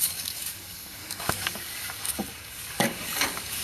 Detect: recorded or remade remade